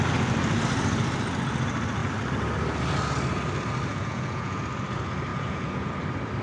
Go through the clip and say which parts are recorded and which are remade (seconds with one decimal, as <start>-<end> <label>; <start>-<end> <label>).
0.0-3.9 recorded; 3.9-4.6 remade; 4.6-5.3 recorded; 5.3-5.9 remade; 5.9-6.4 recorded